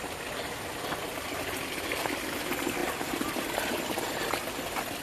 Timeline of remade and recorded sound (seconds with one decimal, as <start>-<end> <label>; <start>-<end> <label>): 0.0-5.0 recorded

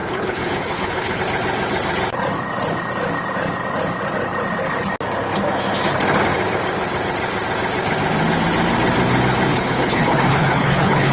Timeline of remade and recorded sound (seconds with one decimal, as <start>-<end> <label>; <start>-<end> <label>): 0.0-1.2 remade; 1.2-9.5 recorded; 9.5-11.1 remade

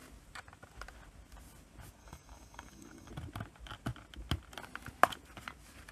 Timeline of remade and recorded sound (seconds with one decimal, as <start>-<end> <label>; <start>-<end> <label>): 0.0-2.0 recorded; 2.0-3.1 remade; 3.1-5.9 recorded

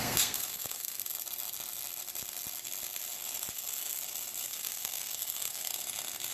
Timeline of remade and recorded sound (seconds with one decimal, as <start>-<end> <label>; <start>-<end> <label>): 0.0-1.0 remade; 1.0-3.5 recorded; 3.5-4.0 remade; 4.0-4.5 recorded; 4.5-5.7 remade; 5.7-6.3 recorded

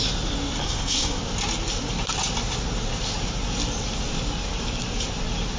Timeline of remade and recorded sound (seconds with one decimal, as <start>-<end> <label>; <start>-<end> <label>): 0.0-0.6 recorded; 0.6-1.2 remade; 1.2-5.6 recorded

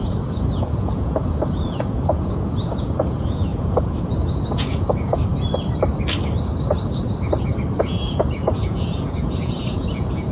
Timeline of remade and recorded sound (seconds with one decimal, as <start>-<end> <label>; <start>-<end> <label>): 0.0-5.3 remade; 5.3-7.8 recorded; 7.8-10.3 remade

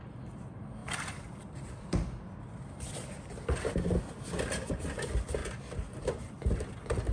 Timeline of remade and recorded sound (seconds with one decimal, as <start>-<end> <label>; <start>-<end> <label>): 0.0-0.8 recorded; 0.8-3.1 remade; 3.1-5.4 recorded; 5.4-6.3 remade; 6.3-7.1 recorded